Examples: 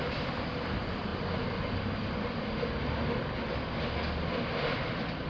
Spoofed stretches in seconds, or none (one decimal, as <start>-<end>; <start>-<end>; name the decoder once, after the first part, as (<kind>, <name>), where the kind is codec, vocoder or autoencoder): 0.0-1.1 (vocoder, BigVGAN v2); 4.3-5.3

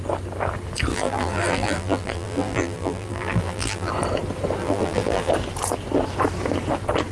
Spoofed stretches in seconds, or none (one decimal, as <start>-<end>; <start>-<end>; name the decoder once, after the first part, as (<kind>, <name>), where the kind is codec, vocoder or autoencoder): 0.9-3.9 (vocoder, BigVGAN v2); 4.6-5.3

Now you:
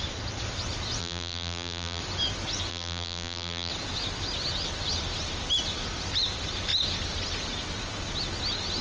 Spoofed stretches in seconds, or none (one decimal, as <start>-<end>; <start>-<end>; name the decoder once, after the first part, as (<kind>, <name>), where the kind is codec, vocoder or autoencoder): 1.0-2.0 (vocoder, BigVGAN v2); 2.7-3.7

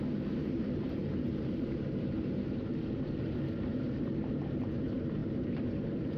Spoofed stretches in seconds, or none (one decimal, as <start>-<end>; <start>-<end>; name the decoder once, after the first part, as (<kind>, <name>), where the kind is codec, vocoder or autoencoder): 0.0-6.2 (vocoder, BigVGAN v2)

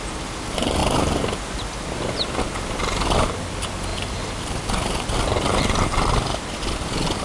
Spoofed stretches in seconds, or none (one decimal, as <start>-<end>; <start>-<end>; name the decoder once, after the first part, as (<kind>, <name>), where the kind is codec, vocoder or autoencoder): 3.9-4.5 (vocoder, BigVGAN v2)